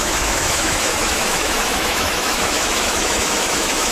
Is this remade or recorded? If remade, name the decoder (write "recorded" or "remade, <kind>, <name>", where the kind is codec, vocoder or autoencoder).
remade, autoencoder, DAC-VAE